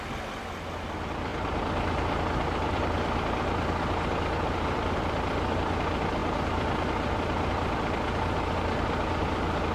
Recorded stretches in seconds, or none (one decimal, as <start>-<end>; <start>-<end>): 0.0-9.7